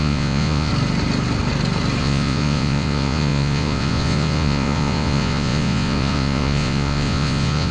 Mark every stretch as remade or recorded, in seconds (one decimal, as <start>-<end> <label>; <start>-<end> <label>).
0.0-0.7 remade; 0.7-2.0 recorded; 2.0-7.7 remade